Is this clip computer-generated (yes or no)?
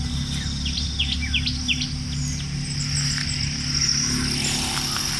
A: no